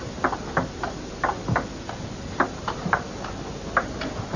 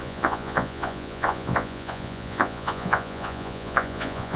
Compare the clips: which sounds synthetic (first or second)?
second